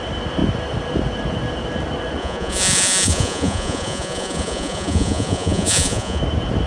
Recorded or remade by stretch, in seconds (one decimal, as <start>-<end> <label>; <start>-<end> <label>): 0.0-2.2 recorded; 2.2-6.2 remade; 6.2-6.7 recorded